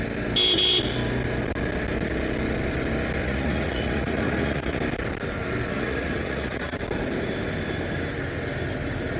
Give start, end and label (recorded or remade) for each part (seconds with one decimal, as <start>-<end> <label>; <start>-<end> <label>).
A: 0.0-3.2 recorded; 3.2-4.8 remade; 4.8-5.7 recorded; 5.7-6.8 remade; 6.8-9.2 recorded